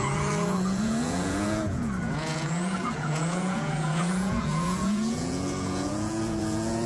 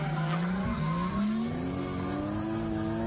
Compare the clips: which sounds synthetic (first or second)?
first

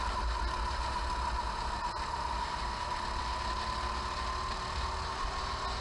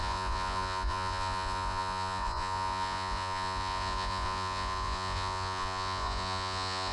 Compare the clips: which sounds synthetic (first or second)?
second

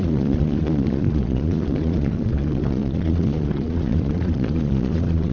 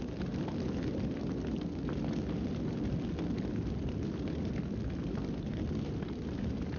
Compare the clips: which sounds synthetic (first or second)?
first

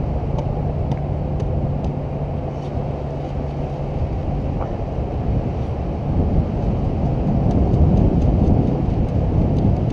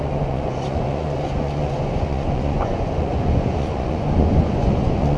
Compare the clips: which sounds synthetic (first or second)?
second